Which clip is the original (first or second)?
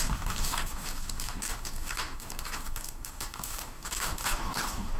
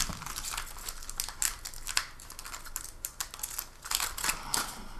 second